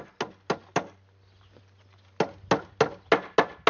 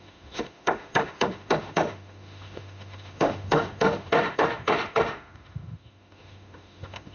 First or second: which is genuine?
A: first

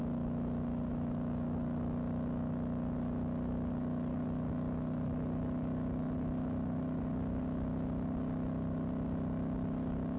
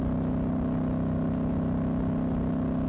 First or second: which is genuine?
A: second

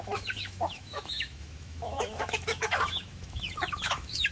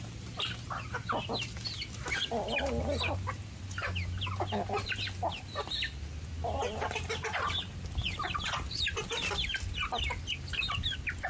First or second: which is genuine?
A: second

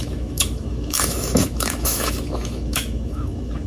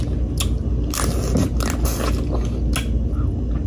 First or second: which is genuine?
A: second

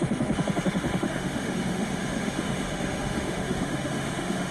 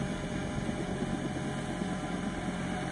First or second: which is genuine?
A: second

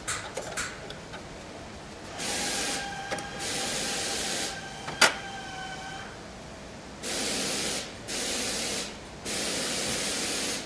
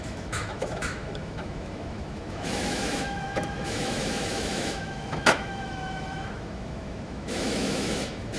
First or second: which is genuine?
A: first